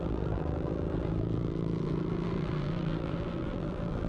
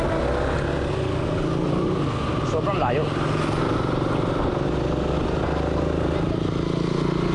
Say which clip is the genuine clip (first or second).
second